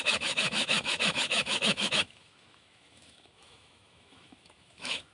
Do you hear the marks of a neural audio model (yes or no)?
yes